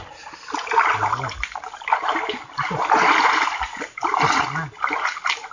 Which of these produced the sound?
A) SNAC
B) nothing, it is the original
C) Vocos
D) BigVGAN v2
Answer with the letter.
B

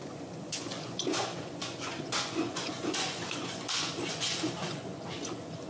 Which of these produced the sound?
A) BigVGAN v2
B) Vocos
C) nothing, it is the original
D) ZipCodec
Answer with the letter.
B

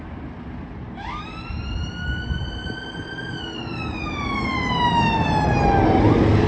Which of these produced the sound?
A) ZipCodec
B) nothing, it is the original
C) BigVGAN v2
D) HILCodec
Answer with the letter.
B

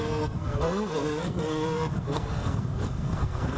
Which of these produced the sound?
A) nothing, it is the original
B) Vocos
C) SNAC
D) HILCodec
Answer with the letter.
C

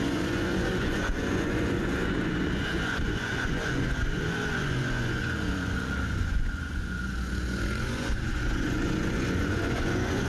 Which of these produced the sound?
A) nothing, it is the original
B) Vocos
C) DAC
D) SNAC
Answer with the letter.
B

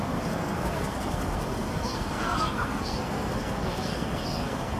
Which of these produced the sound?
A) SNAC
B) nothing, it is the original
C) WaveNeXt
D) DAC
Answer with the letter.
A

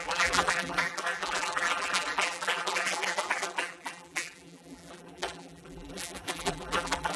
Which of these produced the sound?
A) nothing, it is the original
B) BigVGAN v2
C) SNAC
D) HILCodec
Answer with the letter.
B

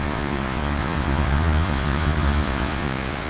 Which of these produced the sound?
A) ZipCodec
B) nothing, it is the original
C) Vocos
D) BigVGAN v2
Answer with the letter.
C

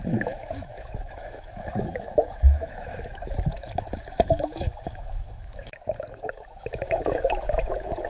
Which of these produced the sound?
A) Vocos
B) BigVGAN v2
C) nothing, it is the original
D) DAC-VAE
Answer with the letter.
D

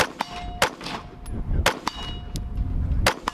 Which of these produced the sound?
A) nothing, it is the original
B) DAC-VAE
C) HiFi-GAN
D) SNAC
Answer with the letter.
A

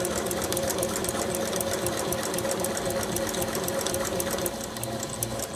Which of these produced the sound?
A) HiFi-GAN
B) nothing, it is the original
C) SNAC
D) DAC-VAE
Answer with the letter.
B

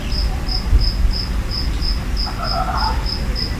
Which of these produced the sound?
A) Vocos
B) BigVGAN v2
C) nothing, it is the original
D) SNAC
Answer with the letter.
C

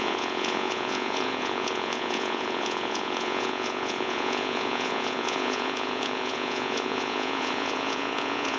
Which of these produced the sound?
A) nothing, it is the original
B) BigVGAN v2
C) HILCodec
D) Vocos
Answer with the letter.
D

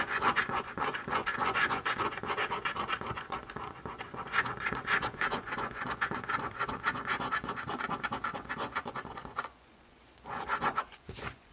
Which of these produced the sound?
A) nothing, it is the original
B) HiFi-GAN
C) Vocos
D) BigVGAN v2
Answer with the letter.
C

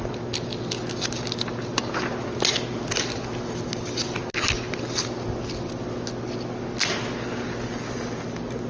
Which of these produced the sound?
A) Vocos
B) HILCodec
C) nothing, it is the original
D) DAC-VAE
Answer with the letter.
C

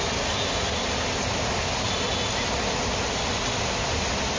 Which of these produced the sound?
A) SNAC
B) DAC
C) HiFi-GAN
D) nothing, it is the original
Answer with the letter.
D